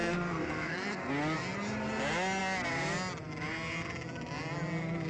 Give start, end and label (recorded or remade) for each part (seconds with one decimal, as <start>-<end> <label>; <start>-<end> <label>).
0.0-1.1 remade; 1.1-5.1 recorded